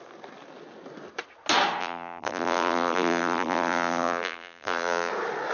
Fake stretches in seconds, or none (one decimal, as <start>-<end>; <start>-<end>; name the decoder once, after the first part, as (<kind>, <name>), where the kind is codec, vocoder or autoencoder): 1.8-5.1 (vocoder, BigVGAN v2)